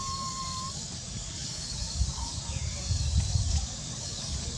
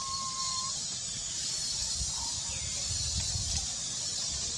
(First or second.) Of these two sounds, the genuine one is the second